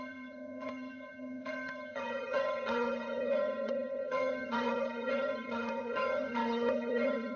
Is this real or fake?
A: fake